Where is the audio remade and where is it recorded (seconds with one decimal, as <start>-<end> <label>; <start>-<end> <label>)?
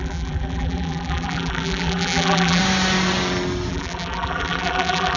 0.0-2.6 remade; 2.6-3.7 recorded; 3.7-5.2 remade